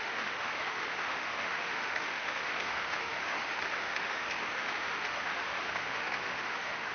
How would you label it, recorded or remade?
remade